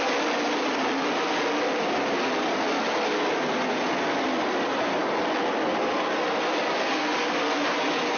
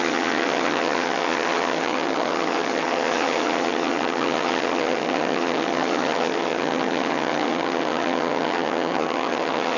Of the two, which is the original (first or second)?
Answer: first